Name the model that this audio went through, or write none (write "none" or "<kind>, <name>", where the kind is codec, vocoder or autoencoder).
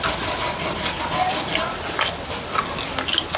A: none